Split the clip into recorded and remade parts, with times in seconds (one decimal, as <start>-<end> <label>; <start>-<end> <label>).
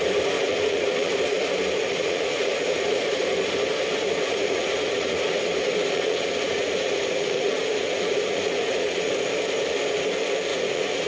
0.0-0.5 recorded; 0.5-1.1 remade; 1.1-1.8 recorded; 1.8-3.2 remade; 3.2-3.9 recorded; 3.9-9.1 remade; 9.1-10.5 recorded; 10.5-11.1 remade